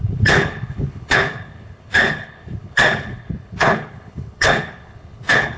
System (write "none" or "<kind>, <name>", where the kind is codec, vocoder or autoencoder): codec, HILCodec